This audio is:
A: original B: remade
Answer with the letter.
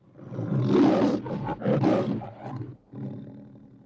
A